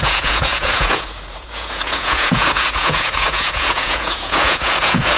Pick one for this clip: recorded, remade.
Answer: remade